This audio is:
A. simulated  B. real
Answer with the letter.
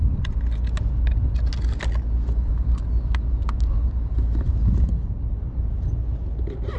B